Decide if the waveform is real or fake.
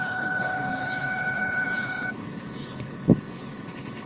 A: fake